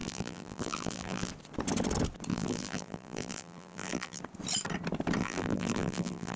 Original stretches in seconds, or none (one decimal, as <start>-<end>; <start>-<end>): 1.3-2.3; 4.2-5.2